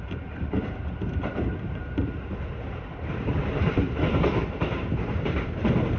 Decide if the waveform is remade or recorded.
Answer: remade